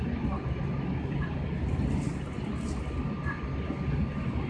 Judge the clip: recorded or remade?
recorded